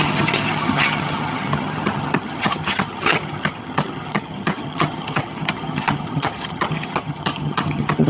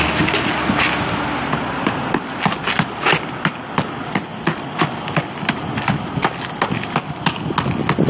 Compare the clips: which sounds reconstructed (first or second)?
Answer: first